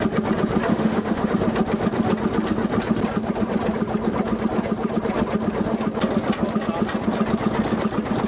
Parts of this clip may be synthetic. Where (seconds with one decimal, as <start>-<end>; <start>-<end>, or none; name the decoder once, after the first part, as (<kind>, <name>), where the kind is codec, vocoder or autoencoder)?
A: 0.7-1.3 (autoencoder, DAC-VAE)